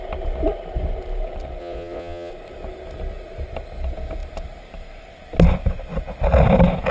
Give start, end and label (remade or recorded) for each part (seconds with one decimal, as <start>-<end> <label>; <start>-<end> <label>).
0.0-1.6 recorded; 1.6-2.3 remade; 2.3-6.9 recorded